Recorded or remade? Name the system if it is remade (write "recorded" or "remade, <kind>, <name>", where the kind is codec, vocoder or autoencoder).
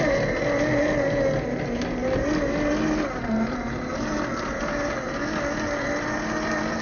recorded